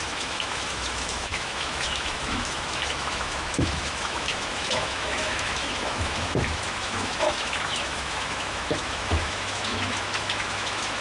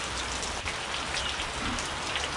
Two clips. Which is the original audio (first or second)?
second